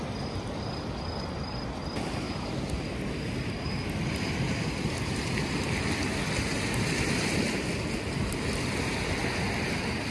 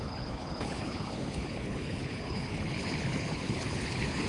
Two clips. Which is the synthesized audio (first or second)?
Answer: second